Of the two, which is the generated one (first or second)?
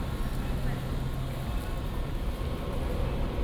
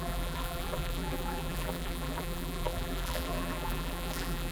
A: second